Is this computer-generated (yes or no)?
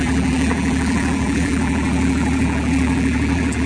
yes